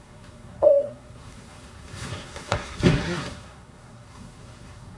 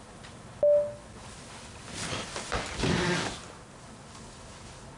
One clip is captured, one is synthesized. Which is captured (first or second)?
second